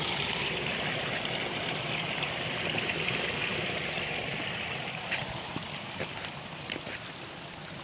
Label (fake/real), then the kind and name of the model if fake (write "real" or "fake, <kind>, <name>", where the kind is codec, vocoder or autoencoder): fake, vocoder, BigVGAN v2